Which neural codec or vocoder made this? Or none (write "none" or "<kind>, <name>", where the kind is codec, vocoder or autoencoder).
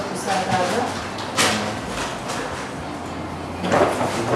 none